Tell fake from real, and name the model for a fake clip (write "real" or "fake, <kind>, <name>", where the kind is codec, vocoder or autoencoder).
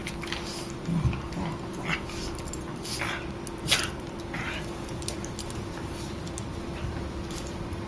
real